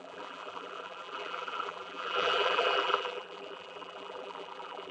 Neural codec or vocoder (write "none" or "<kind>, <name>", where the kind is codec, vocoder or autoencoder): vocoder, BigVGAN v2